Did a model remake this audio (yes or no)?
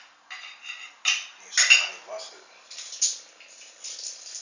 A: no